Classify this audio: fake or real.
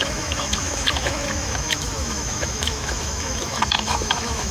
fake